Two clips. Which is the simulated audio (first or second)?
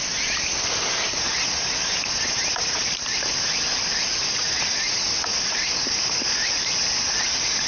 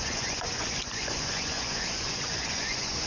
second